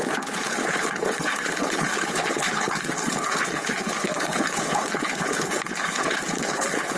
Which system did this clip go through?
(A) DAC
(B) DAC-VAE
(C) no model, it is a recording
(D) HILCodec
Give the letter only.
D